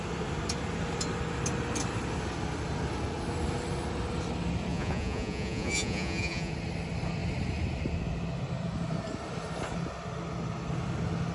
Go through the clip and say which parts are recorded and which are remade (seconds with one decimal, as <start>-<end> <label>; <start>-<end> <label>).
0.0-4.7 recorded; 4.7-6.5 remade; 6.5-11.3 recorded